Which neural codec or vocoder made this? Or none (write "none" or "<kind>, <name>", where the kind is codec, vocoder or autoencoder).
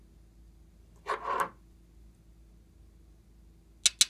none